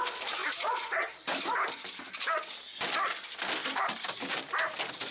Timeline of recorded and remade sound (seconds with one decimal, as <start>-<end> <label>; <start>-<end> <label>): 0.0-0.4 recorded; 0.4-2.4 remade; 2.4-3.6 recorded; 3.6-4.5 remade; 4.5-5.1 recorded